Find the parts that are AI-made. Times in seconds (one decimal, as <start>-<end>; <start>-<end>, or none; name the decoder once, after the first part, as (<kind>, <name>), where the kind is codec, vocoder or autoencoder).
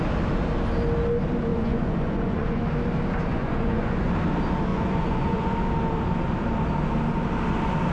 1.5-2.6 (vocoder, Vocos); 3.3-4.1; 4.7-5.5